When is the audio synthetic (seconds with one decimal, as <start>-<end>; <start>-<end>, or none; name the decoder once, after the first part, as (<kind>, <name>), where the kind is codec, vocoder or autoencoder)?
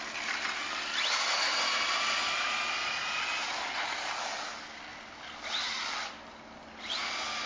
none